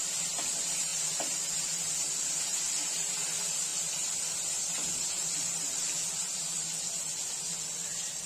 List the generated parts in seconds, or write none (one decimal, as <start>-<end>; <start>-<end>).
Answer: none